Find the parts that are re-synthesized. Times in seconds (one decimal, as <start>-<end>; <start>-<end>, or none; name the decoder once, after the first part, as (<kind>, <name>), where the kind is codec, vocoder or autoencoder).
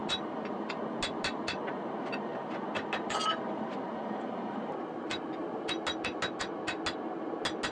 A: 2.3-4.7 (vocoder, BigVGAN v2)